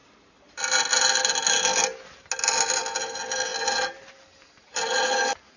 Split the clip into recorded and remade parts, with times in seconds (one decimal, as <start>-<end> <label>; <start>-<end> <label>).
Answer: 0.0-5.6 recorded